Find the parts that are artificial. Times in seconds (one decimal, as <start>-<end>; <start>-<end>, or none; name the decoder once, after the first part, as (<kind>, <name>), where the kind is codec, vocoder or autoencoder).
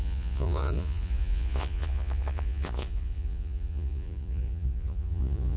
0.0-5.6 (vocoder, Vocos)